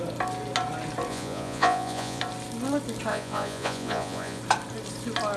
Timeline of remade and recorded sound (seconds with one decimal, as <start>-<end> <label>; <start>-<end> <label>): 0.0-1.1 recorded; 1.1-2.2 remade; 2.2-3.1 recorded; 3.1-4.4 remade; 4.4-5.4 recorded